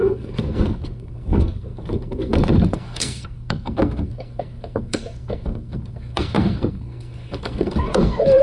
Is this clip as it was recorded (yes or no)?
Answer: no